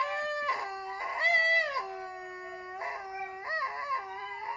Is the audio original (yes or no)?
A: yes